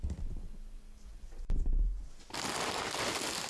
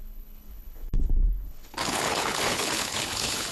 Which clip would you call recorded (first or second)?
first